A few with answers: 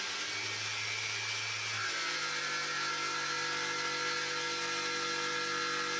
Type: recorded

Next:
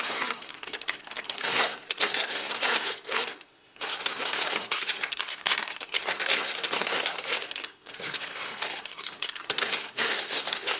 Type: remade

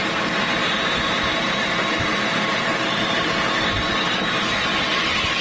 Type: recorded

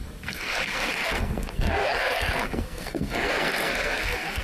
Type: remade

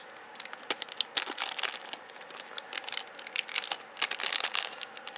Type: recorded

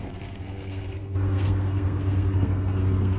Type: remade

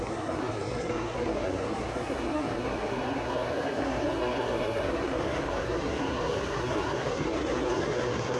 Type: remade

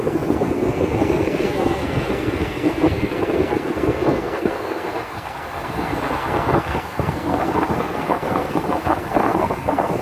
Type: remade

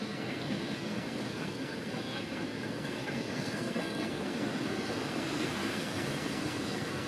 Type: remade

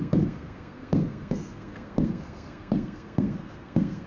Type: remade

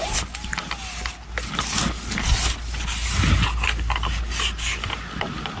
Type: recorded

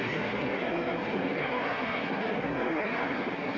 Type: remade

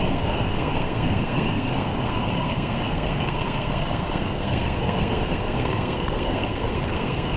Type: remade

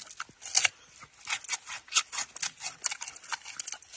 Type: recorded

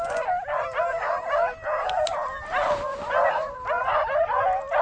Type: recorded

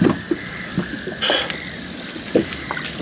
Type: recorded